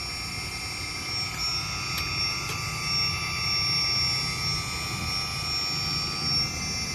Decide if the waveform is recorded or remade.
recorded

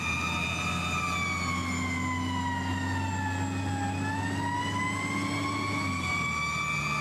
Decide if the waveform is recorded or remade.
recorded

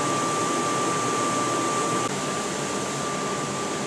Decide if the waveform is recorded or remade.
recorded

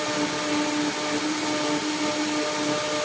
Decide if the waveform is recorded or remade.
recorded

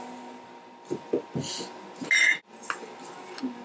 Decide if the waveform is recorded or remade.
recorded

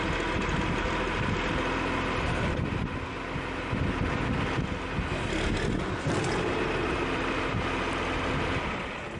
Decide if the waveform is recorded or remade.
recorded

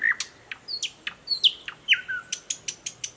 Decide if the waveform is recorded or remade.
recorded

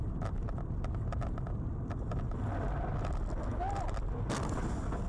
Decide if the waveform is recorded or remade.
recorded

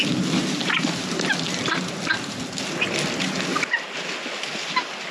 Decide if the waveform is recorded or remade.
recorded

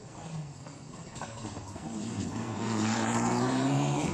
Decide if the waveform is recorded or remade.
remade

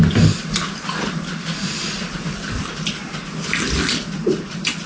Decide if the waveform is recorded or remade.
recorded